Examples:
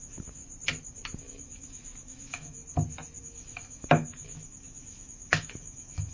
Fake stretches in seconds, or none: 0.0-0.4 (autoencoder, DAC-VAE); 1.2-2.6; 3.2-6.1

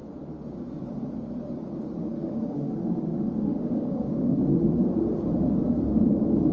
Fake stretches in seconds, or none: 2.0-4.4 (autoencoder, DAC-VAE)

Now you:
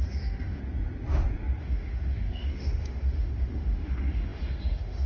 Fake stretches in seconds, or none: 0.0-0.6 (autoencoder, DAC-VAE); 1.6-5.1

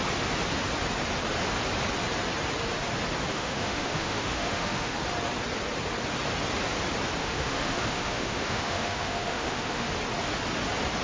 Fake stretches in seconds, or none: 3.3-5.0 (autoencoder, DAC-VAE); 7.2-9.9

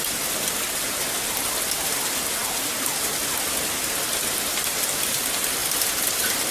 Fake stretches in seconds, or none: none

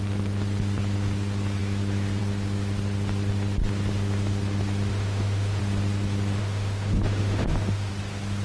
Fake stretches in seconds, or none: 4.9-5.6 (autoencoder, DAC-VAE); 6.4-7.9

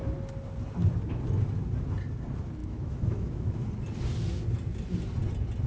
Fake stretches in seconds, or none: 2.6-3.7 (autoencoder, DAC-VAE)